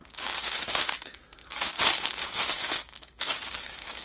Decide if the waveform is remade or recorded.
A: remade